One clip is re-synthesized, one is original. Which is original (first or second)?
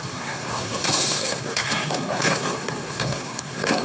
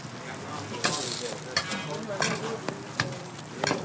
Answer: second